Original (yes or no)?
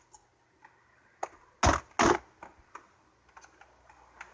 yes